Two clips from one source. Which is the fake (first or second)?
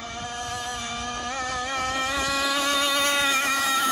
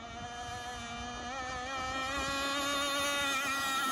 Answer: first